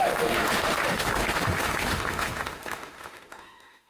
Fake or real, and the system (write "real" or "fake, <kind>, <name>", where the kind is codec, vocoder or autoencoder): fake, autoencoder, DAC-VAE